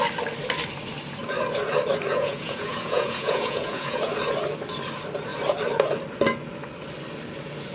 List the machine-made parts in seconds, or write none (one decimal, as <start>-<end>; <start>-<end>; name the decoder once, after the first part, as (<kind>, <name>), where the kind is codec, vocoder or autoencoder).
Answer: 2.1-4.1 (vocoder, Vocos)